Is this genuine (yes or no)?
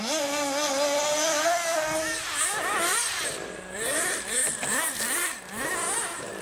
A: yes